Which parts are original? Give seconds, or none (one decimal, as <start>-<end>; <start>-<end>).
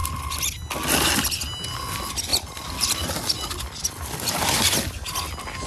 0.0-5.7